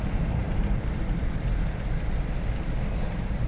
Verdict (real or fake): real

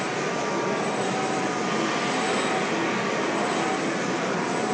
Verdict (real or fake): real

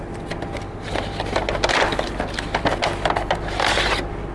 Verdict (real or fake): real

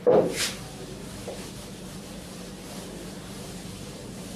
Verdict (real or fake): real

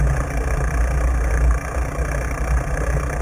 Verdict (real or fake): real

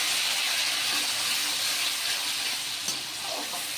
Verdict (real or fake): real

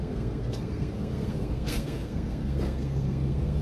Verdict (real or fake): fake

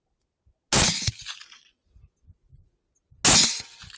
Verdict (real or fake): real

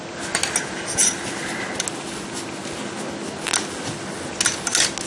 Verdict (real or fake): real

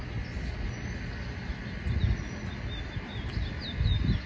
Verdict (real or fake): real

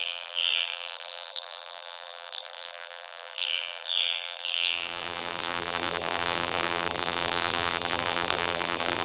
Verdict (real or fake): fake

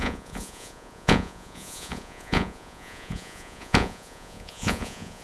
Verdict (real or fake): fake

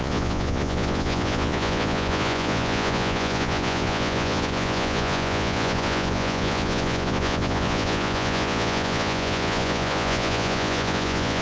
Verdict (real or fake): fake